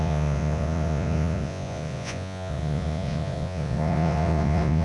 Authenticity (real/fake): fake